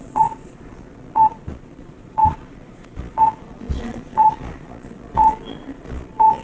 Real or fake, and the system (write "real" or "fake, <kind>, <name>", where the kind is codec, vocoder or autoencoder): fake, vocoder, Vocos